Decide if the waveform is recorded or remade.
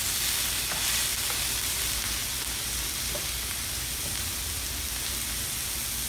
recorded